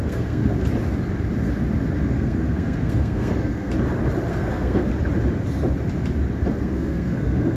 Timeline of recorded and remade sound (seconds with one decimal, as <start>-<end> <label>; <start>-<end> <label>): 0.0-0.4 remade; 0.4-2.1 recorded; 2.1-3.7 remade; 3.7-4.3 recorded; 4.3-4.9 remade; 4.9-6.6 recorded; 6.6-7.6 remade